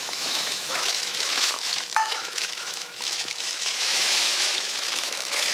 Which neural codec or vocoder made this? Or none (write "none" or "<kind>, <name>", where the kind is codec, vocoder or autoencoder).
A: autoencoder, DAC-VAE